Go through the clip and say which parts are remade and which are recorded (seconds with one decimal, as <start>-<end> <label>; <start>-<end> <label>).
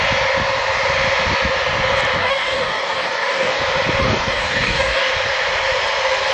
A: 0.0-2.2 recorded; 2.2-3.6 remade; 3.6-4.0 recorded; 4.0-5.1 remade; 5.1-6.3 recorded